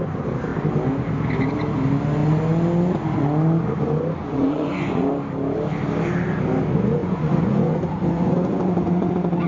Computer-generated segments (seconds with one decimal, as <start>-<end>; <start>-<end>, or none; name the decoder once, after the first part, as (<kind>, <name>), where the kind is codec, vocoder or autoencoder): 4.2-5.1 (vocoder, Vocos); 7.0-9.1